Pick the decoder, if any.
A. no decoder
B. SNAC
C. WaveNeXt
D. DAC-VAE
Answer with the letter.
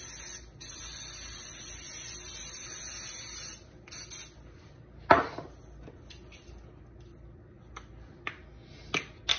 A